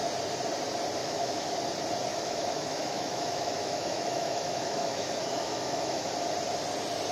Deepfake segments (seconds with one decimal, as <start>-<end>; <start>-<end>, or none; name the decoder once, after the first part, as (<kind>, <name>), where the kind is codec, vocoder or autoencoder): 1.0-1.6 (autoencoder, DAC-VAE); 2.1-6.1